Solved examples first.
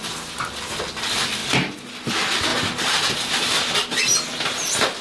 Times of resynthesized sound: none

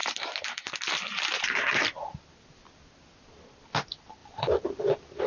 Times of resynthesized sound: none